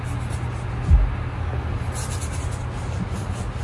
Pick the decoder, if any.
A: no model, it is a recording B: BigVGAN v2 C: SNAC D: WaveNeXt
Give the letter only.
A